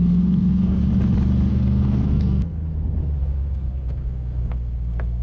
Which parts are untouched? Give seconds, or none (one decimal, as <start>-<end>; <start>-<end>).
0.8-1.5; 2.6-3.2